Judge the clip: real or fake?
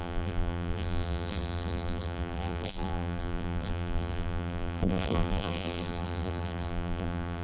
fake